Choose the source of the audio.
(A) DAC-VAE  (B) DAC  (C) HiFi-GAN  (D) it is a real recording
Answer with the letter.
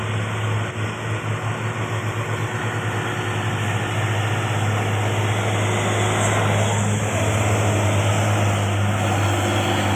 D